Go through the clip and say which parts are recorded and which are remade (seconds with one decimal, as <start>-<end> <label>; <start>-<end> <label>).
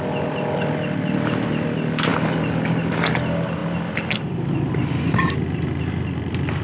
0.0-2.1 remade; 2.1-3.1 recorded; 3.1-6.6 remade